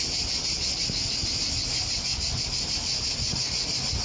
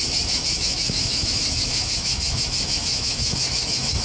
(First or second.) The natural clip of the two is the first